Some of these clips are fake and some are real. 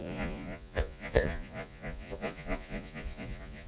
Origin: fake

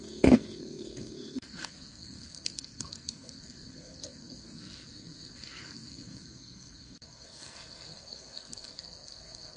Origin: fake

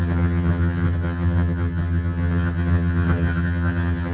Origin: fake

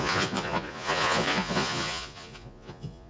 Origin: fake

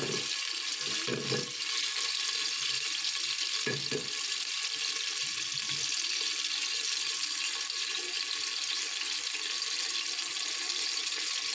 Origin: real